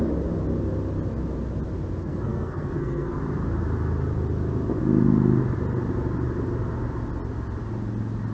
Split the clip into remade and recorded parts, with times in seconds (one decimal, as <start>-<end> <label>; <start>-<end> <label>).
0.0-2.0 recorded; 2.0-3.2 remade; 3.2-8.3 recorded